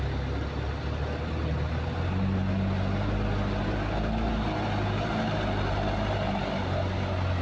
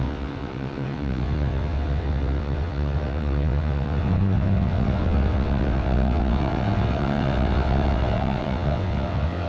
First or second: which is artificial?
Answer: second